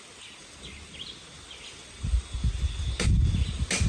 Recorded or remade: recorded